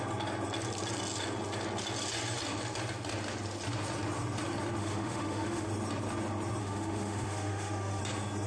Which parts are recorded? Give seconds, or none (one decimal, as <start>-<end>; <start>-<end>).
0.0-4.8; 5.7-6.6; 8.0-8.5